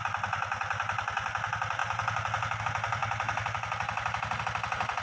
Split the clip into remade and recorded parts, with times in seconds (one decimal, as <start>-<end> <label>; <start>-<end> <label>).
0.0-5.0 recorded